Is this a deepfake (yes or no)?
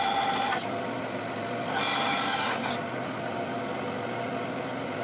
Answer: no